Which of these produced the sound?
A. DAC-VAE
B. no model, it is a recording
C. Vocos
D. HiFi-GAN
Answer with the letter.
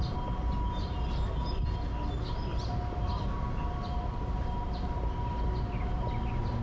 B